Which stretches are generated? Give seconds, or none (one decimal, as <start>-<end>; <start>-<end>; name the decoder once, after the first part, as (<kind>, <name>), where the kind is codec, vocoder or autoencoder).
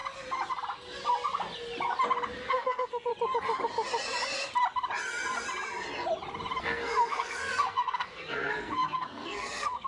2.5-3.1 (codec, SNAC); 6.6-9.9